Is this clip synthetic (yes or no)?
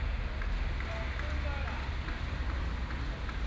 no